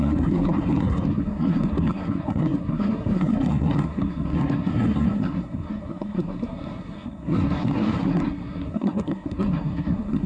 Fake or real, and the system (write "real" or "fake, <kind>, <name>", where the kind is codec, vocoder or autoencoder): fake, codec, SNAC